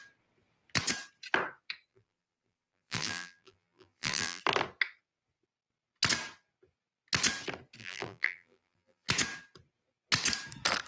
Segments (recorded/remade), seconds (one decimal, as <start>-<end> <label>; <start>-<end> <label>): 0.0-1.9 recorded; 1.9-4.4 remade; 4.4-7.8 recorded; 7.8-9.1 remade; 9.1-10.9 recorded